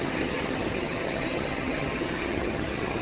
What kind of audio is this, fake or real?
fake